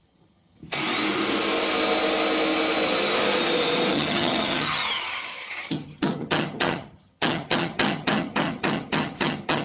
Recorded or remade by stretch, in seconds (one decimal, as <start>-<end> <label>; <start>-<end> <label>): 0.0-0.6 remade; 0.6-3.9 recorded; 3.9-9.6 remade